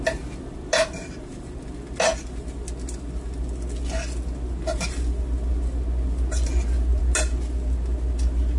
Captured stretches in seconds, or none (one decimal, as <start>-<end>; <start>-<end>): 0.0-8.6